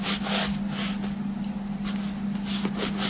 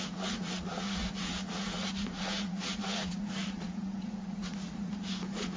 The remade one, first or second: second